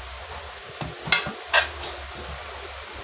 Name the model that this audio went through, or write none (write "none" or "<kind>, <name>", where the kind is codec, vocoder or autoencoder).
none